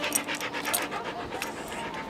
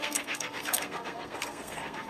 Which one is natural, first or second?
first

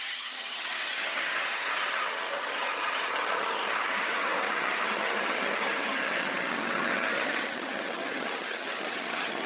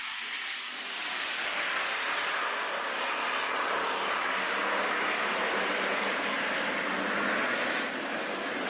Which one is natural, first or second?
second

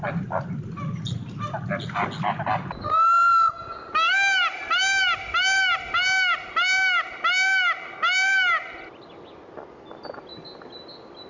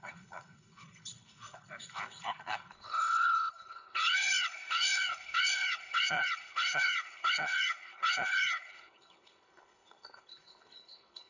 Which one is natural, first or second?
first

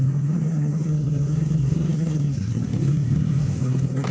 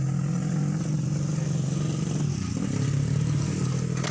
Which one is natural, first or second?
second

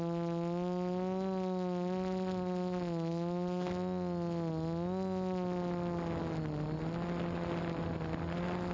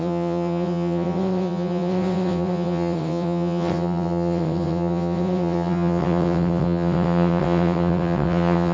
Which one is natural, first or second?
first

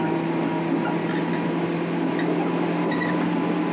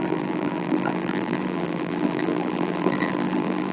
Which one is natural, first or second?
first